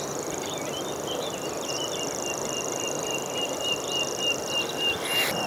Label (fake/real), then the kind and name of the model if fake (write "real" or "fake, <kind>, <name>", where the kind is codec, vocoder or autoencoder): fake, vocoder, BigVGAN v2